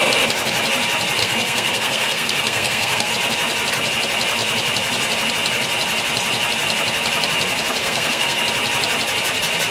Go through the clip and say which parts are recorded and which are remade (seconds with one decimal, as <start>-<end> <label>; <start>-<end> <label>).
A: 0.0-1.2 recorded; 1.2-3.1 remade; 3.1-7.8 recorded; 7.8-8.4 remade; 8.4-9.7 recorded